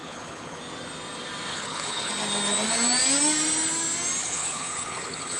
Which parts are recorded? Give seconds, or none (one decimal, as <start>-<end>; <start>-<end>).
0.6-1.5; 2.1-4.2